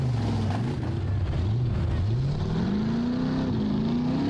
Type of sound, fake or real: real